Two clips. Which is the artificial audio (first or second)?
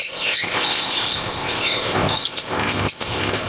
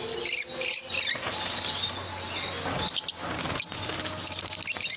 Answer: first